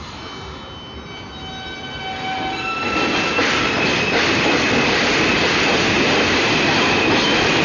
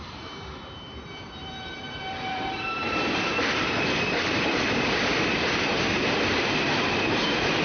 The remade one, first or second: second